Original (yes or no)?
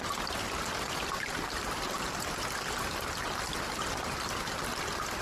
yes